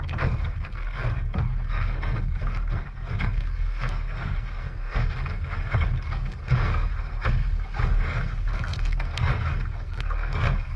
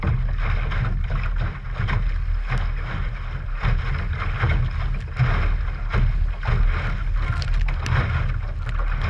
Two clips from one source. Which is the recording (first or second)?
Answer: second